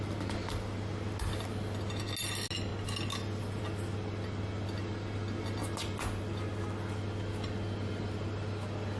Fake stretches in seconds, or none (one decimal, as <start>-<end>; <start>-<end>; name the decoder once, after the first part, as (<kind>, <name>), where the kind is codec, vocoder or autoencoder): none